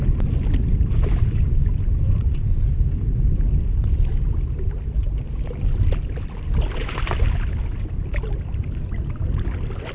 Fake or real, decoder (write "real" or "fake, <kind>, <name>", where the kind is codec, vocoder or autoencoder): real